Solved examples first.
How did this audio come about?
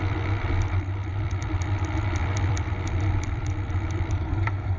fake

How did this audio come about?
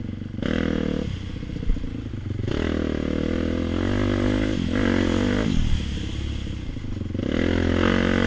real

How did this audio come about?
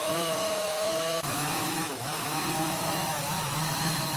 fake